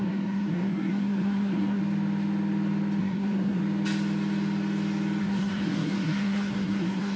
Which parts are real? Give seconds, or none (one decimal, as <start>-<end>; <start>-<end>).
1.8-3.0; 3.6-5.2